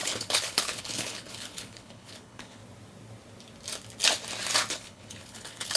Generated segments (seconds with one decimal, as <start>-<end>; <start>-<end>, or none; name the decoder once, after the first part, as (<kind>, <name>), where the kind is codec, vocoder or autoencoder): 0.0-2.6 (codec, HILCodec); 4.7-5.8